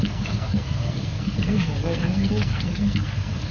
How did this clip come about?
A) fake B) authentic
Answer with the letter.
A